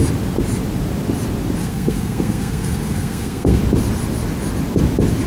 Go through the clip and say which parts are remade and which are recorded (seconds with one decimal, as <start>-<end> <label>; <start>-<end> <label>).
0.0-1.6 recorded; 1.6-3.6 remade; 3.6-5.3 recorded